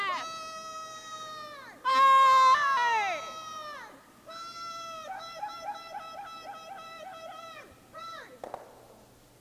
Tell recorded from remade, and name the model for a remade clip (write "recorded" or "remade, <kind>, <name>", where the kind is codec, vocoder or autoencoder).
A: recorded